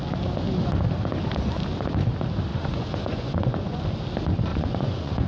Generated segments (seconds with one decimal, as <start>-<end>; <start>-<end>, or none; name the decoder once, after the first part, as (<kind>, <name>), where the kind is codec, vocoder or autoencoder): 2.5-3.8 (vocoder, Vocos); 4.5-5.3